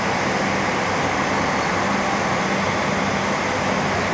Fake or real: real